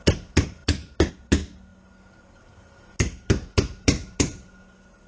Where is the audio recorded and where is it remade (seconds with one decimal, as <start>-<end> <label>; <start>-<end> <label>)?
0.0-5.1 recorded